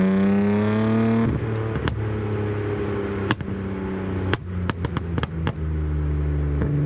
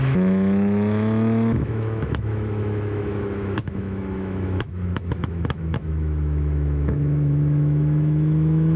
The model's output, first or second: second